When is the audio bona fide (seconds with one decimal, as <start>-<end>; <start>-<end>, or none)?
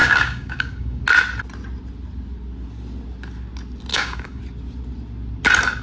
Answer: 1.0-3.9; 4.4-5.8